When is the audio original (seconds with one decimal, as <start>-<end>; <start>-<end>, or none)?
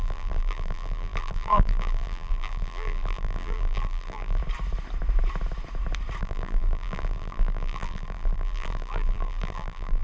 4.4-6.2